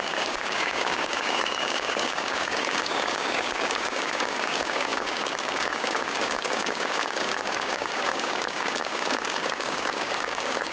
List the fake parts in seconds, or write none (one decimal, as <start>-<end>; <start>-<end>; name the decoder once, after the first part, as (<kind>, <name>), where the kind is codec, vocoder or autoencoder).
0.0-10.7 (codec, DAC)